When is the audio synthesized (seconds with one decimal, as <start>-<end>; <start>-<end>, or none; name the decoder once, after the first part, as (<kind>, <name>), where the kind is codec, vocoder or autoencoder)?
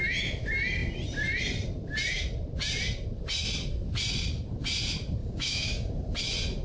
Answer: 5.2-5.9 (codec, DAC)